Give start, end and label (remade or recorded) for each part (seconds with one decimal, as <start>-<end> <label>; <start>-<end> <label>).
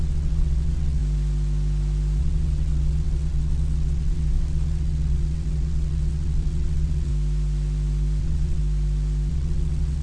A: 0.0-1.0 remade; 1.0-2.2 recorded; 2.2-7.1 remade; 7.1-8.2 recorded; 8.2-8.6 remade; 8.6-9.3 recorded; 9.3-10.0 remade